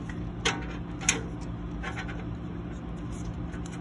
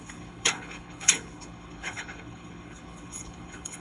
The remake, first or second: second